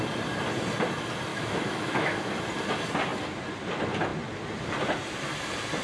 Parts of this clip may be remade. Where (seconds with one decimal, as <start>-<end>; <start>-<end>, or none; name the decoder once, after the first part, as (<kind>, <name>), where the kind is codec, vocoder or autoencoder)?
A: 1.3-2.3 (autoencoder, DAC-VAE)